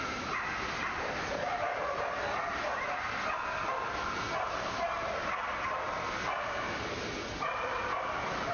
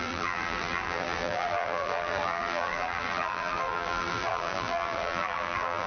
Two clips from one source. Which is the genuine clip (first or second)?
first